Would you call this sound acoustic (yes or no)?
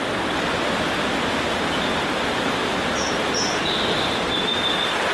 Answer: yes